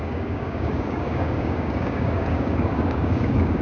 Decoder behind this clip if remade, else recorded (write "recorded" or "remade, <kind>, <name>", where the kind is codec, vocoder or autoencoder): remade, codec, DAC